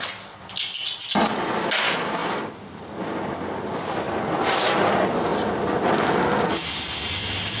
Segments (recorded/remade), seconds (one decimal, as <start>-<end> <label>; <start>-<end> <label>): 0.0-7.6 recorded